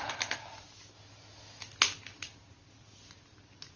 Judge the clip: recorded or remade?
recorded